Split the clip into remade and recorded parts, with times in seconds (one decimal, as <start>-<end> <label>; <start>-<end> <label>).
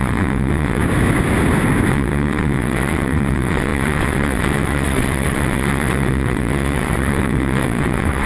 0.0-0.8 remade; 0.8-1.9 recorded; 1.9-8.3 remade